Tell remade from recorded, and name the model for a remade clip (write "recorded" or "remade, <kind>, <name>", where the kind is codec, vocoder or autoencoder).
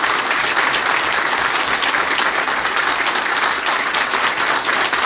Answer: recorded